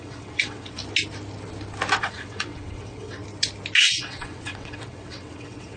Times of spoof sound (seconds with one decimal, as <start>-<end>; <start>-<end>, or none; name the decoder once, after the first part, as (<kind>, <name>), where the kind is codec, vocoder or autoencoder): 0.0-0.8 (vocoder, WaveNeXt); 2.0-3.2; 3.8-5.8